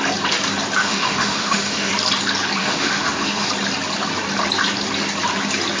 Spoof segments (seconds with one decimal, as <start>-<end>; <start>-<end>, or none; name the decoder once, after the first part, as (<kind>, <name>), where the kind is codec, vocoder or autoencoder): 0.8-1.9 (autoencoder, DAC-VAE); 2.6-3.5